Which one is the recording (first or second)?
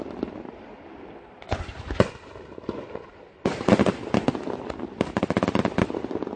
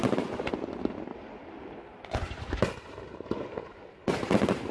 second